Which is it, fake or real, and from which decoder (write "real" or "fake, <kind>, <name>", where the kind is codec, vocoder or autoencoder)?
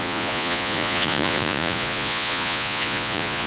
fake, vocoder, Vocos